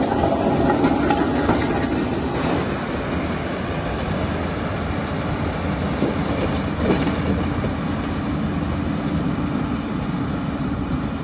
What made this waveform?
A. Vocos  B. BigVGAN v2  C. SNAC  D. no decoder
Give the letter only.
D